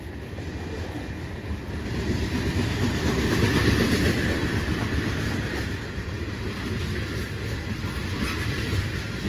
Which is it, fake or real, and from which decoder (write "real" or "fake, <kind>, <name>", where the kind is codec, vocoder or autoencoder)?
real